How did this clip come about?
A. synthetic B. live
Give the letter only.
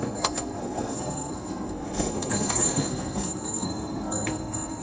A